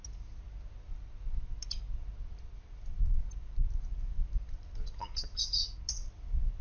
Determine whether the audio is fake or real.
real